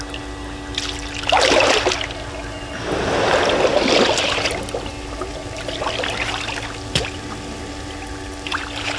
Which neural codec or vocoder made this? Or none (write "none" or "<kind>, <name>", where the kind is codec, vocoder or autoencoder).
none